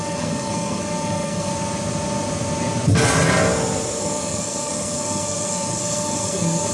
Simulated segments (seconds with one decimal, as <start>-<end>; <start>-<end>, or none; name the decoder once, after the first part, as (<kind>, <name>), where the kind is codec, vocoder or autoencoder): 0.0-1.5 (codec, SNAC); 4.0-6.7